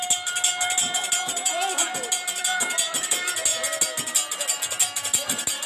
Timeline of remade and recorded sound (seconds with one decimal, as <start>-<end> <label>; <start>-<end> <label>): 0.0-5.7 recorded